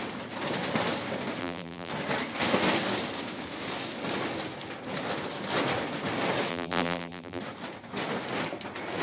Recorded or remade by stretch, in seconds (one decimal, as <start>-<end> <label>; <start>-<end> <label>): 0.0-1.4 recorded; 1.4-1.9 remade; 1.9-6.5 recorded; 6.5-7.4 remade; 7.4-9.0 recorded